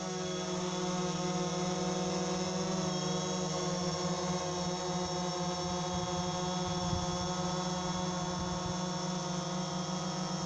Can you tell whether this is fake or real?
real